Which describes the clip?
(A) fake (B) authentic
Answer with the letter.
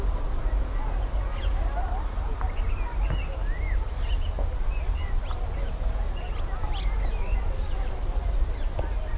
B